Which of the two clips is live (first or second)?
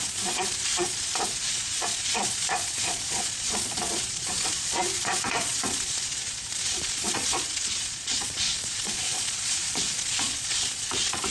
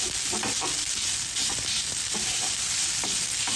second